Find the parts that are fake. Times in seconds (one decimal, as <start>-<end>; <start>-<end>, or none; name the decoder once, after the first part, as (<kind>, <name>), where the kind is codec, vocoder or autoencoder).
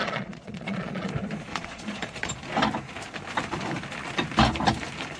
0.0-1.1 (vocoder, Vocos); 1.5-2.3